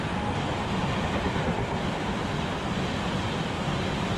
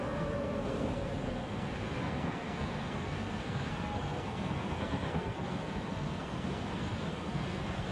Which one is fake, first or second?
second